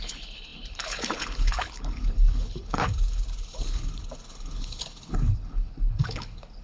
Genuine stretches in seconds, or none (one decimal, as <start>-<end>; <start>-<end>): none